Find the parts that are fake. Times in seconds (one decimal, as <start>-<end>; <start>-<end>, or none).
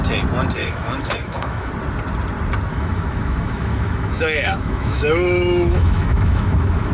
0.6-1.7; 2.7-6.9